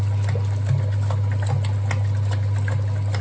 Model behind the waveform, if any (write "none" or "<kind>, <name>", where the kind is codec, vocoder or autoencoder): none